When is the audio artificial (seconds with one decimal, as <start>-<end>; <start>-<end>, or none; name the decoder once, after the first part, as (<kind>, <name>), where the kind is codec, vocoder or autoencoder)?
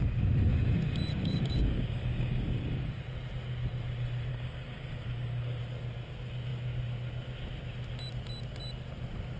1.1-2.9 (codec, DAC); 4.3-5.6